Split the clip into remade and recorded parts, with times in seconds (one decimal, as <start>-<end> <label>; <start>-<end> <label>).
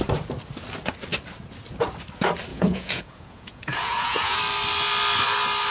0.0-2.5 recorded; 2.5-4.4 remade; 4.4-5.7 recorded